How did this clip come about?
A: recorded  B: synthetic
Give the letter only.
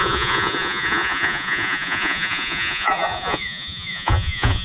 B